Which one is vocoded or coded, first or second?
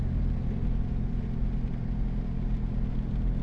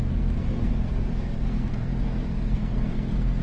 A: second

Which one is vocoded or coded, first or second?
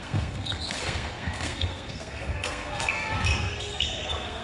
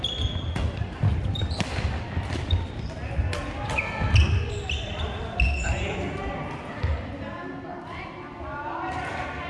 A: first